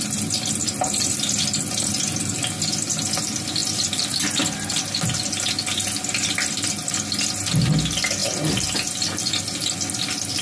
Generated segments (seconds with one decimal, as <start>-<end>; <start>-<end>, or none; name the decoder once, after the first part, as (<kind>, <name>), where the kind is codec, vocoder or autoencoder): none